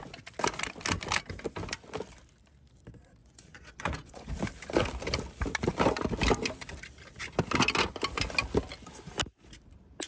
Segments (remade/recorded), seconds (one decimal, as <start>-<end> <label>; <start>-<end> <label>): 0.0-3.2 recorded; 3.2-4.3 remade; 4.3-10.1 recorded